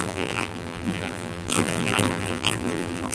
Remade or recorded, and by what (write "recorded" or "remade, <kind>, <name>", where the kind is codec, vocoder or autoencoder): remade, vocoder, BigVGAN v2